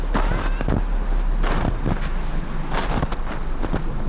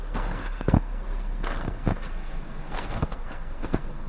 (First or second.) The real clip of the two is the first